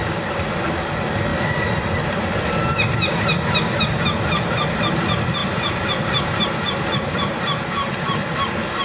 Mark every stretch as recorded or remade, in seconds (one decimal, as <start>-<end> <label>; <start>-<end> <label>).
0.0-1.3 recorded; 1.3-1.9 remade; 1.9-5.4 recorded; 5.4-8.8 remade